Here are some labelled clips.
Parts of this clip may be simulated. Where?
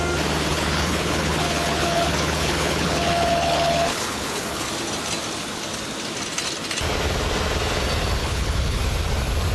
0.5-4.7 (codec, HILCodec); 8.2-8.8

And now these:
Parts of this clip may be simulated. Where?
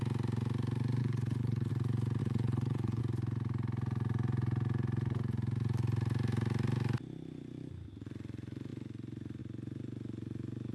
1.0-1.7 (codec, HILCodec); 2.2-3.0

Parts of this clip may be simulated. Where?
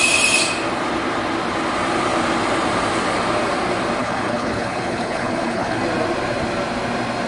4.0-5.8 (codec, HILCodec)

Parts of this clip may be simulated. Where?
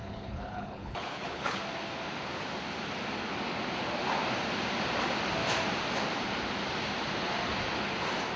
0.0-1.6 (codec, HILCodec)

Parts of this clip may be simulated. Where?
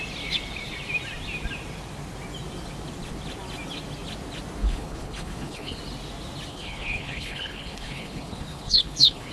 4.6-5.8 (codec, HILCodec); 6.5-9.3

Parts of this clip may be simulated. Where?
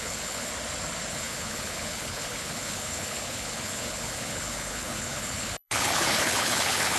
0.0-0.5 (codec, HILCodec); 1.1-7.0